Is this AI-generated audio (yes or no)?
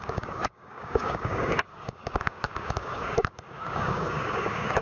yes